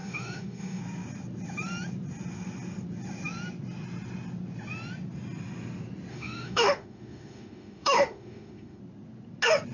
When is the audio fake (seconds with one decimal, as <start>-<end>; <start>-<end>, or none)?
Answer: 0.0-0.8; 6.1-8.8